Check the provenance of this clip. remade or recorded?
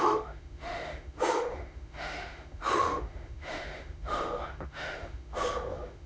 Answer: remade